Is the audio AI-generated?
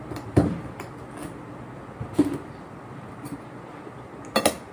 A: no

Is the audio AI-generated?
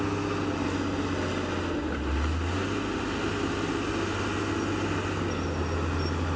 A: no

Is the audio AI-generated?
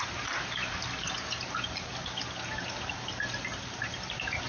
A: yes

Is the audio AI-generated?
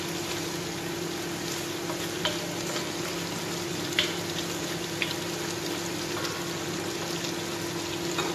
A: no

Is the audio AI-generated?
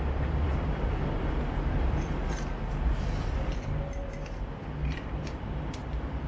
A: yes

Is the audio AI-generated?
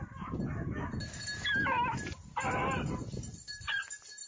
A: no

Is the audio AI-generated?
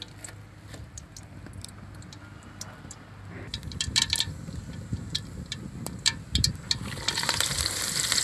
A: yes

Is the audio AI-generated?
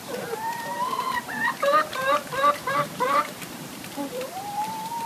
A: yes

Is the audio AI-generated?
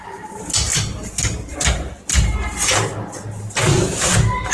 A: no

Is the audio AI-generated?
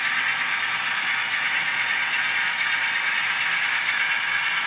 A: no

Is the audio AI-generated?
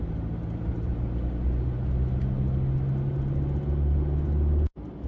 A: no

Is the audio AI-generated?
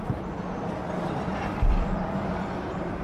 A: yes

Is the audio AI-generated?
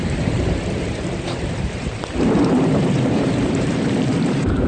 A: yes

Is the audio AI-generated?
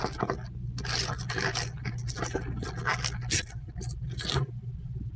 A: no